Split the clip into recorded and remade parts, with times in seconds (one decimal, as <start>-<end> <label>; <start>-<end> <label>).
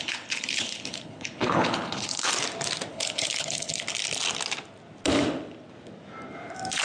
0.0-2.3 remade; 2.3-2.9 recorded; 2.9-3.7 remade; 3.7-6.8 recorded